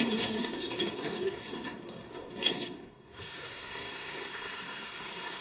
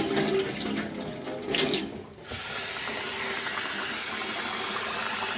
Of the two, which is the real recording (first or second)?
second